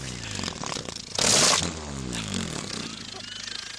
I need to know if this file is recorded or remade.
recorded